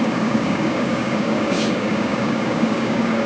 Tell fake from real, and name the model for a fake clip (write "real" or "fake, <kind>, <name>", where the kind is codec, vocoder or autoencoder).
fake, codec, DAC